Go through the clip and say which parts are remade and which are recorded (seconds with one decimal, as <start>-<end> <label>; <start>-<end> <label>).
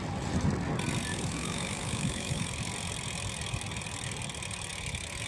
0.0-1.1 recorded; 1.1-2.5 remade; 2.5-5.3 recorded